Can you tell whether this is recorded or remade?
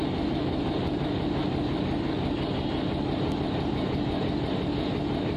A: recorded